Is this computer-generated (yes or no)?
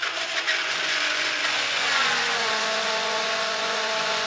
yes